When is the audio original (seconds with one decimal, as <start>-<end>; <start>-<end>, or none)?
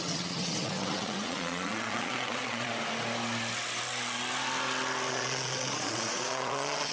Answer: 2.7-5.1